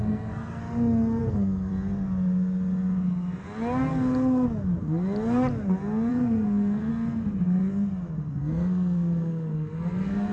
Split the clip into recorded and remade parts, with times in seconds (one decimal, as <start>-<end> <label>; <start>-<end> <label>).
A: 0.0-0.6 remade; 0.6-1.2 recorded; 1.2-1.7 remade; 1.7-6.1 recorded; 6.1-6.9 remade; 6.9-8.3 recorded; 8.3-10.3 remade